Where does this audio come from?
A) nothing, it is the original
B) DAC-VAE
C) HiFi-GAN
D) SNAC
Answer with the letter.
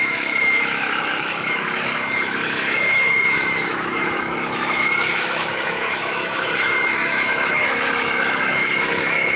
B